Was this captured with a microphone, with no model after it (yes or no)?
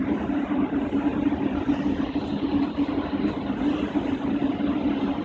yes